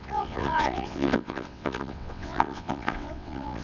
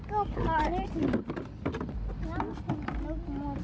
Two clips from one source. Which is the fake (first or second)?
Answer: first